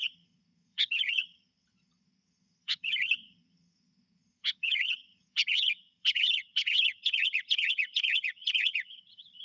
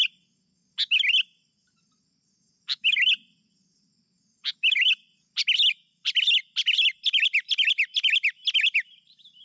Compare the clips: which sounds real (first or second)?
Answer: second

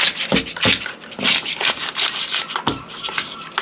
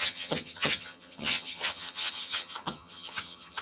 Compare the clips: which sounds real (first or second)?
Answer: first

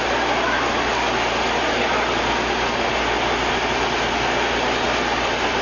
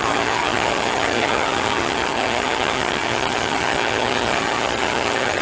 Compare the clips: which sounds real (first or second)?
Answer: first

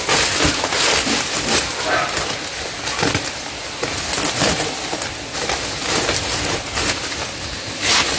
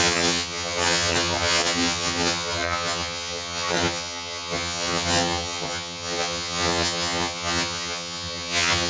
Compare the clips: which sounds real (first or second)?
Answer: first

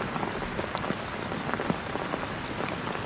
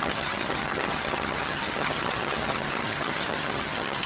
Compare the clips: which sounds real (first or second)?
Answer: first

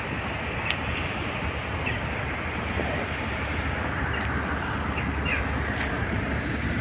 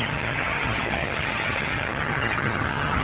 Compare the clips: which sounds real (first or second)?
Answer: first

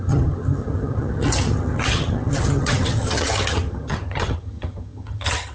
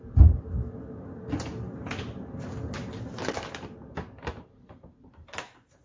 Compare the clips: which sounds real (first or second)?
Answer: second